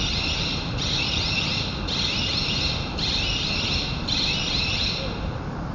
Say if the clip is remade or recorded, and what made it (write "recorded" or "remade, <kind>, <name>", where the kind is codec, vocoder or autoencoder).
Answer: remade, vocoder, BigVGAN v2